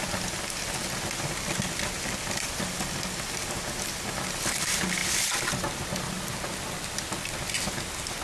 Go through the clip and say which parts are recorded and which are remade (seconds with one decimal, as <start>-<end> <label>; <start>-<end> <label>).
0.0-8.2 recorded